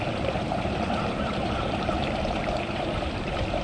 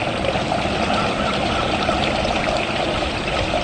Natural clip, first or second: second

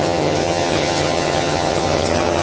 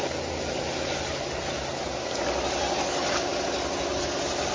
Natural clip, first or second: second